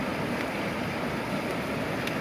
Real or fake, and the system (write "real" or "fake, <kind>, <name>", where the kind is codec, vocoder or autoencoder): real